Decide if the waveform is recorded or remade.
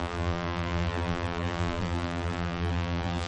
remade